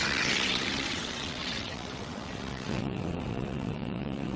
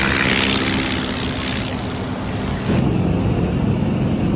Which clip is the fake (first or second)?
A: first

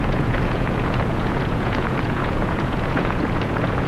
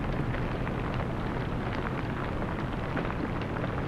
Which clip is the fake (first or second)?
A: first